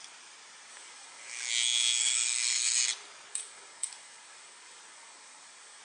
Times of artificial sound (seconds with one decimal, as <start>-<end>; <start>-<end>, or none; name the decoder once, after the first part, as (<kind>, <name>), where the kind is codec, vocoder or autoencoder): 0.7-1.5 (codec, DAC); 2.0-2.8; 3.3-5.8